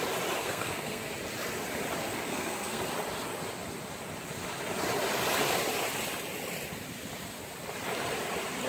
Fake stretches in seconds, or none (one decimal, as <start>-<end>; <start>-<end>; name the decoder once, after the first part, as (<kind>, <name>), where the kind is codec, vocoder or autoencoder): 0.4-1.1 (codec, SNAC); 2.0-2.8